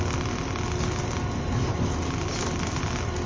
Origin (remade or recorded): recorded